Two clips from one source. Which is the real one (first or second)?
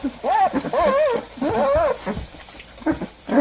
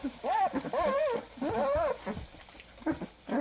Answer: first